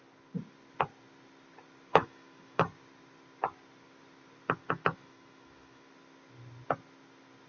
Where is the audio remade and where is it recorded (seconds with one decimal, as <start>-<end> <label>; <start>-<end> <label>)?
0.0-1.9 recorded; 1.9-2.6 remade; 2.6-4.6 recorded; 4.6-5.9 remade; 5.9-7.5 recorded